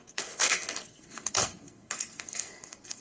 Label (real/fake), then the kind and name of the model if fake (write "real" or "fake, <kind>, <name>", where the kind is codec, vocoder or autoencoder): fake, codec, SNAC